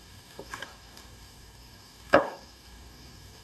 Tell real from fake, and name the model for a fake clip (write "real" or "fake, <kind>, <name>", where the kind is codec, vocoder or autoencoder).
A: fake, codec, DAC